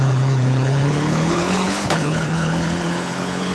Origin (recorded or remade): remade